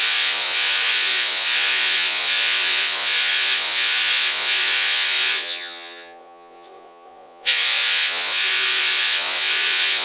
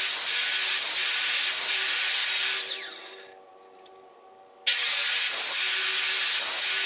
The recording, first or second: second